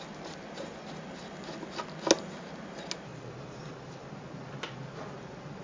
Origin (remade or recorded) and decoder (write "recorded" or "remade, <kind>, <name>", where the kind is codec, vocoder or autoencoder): recorded